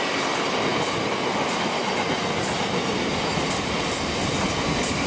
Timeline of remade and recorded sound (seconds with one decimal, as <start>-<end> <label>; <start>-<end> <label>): 0.0-5.1 recorded